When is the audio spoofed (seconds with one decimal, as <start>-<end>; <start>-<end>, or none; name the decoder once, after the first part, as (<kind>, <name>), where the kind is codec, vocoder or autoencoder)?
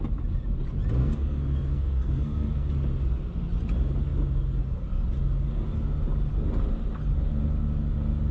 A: 1.0-2.7 (codec, SNAC)